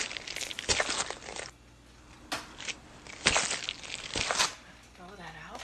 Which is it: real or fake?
real